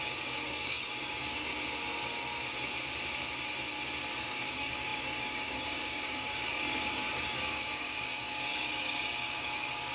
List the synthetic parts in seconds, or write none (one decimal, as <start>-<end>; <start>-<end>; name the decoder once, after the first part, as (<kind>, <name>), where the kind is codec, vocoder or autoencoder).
0.0-1.5 (codec, DAC); 4.2-9.9